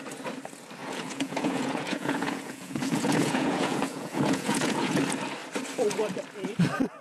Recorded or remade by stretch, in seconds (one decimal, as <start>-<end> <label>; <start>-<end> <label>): 0.0-0.8 recorded; 0.8-5.0 remade; 5.0-7.0 recorded